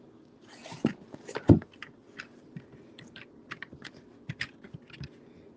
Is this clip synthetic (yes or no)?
no